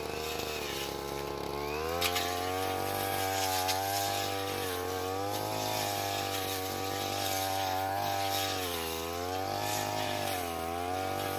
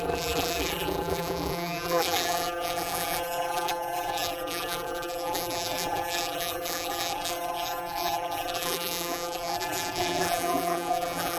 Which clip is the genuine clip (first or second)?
first